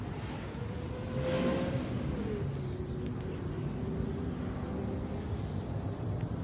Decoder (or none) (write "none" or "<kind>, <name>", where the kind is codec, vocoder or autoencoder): none